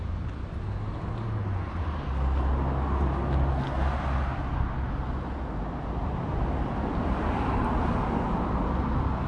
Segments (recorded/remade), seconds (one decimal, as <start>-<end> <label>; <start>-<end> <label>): 0.0-6.0 recorded; 6.0-7.5 remade; 7.5-9.3 recorded